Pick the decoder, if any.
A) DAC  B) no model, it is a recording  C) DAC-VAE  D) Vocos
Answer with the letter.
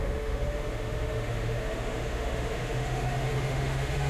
C